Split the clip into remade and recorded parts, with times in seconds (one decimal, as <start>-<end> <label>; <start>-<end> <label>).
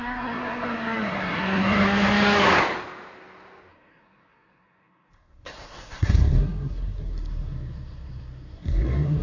0.0-2.5 remade; 2.5-3.7 recorded; 3.7-9.2 remade